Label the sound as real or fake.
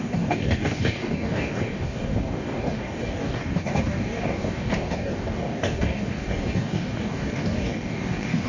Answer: fake